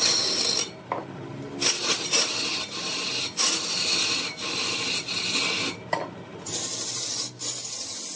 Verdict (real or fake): real